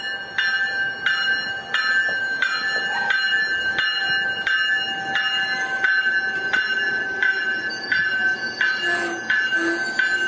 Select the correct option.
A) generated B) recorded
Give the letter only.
B